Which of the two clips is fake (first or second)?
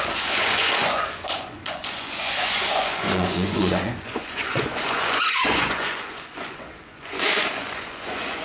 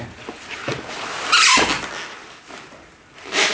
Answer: first